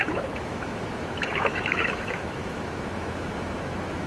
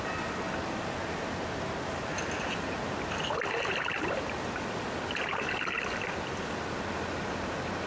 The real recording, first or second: second